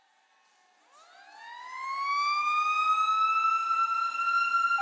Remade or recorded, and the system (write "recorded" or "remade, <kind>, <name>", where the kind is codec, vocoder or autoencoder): recorded